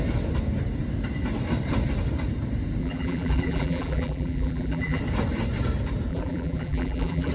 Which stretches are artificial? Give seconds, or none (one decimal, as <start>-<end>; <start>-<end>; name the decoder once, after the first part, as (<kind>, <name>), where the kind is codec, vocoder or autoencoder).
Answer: 2.8-5.0 (vocoder, BigVGAN v2); 6.1-7.3